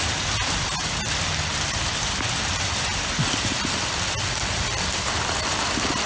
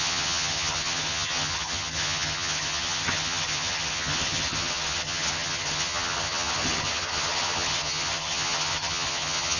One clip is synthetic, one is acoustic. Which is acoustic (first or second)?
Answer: first